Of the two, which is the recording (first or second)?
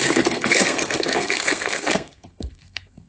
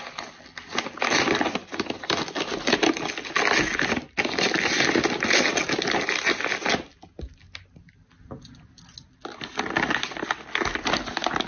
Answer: second